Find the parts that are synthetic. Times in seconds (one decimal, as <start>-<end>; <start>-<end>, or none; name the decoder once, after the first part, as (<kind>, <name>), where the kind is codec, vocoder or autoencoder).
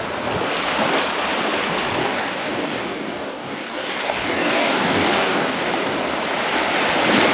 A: 2.0-5.7 (codec, DAC)